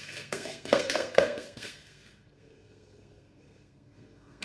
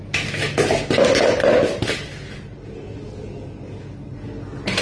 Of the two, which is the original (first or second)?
second